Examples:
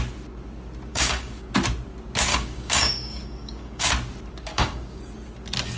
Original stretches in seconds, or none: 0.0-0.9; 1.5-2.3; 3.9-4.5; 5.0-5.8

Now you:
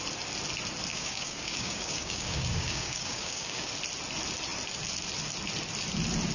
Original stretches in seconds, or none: 0.0-0.9; 3.7-6.3

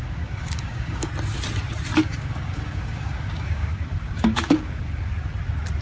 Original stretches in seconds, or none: 1.1-2.0; 5.1-5.8

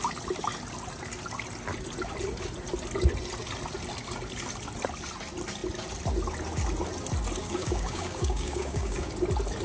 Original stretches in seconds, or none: 0.0-7.4; 9.1-9.6

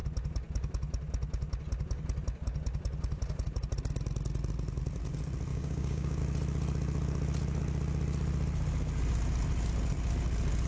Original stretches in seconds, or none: 0.0-5.5; 6.2-10.7

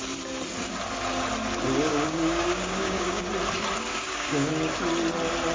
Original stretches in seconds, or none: 0.0-1.9; 3.2-3.9; 4.5-5.5